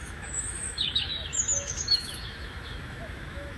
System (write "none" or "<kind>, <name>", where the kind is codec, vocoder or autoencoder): autoencoder, DAC-VAE